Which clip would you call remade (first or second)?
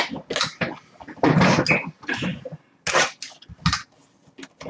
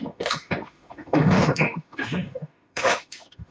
second